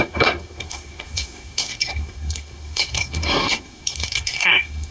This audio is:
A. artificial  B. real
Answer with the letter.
A